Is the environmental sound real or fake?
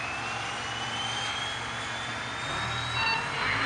real